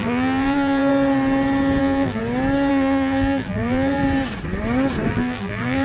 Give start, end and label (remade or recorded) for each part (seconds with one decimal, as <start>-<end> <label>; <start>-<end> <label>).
0.0-0.9 remade; 0.9-1.8 recorded; 1.8-2.2 remade; 2.2-2.7 recorded; 2.7-4.0 remade; 4.0-5.1 recorded; 5.1-5.8 remade